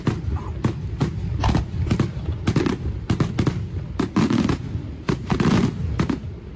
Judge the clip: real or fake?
real